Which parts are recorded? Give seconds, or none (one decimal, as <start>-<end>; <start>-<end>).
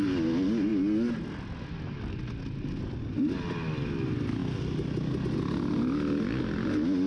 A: 0.0-7.1